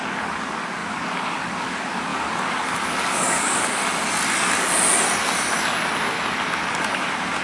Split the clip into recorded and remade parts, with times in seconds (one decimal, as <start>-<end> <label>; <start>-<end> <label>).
0.0-3.8 remade; 3.8-6.8 recorded; 6.8-7.4 remade